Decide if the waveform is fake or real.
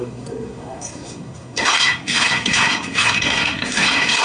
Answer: fake